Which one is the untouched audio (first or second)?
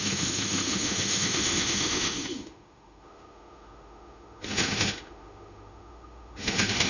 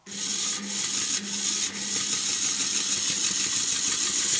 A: second